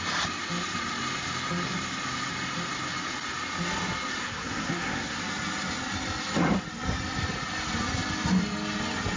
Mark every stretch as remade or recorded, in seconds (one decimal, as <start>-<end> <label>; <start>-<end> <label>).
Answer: 0.0-4.2 recorded; 4.2-5.2 remade; 5.2-9.2 recorded